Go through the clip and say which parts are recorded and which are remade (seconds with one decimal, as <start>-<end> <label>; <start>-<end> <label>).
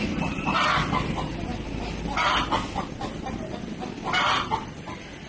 0.0-5.3 recorded